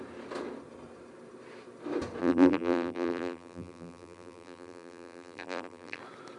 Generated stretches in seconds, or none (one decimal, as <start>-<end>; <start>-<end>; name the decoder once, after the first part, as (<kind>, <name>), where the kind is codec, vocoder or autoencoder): 2.2-6.0 (vocoder, BigVGAN v2)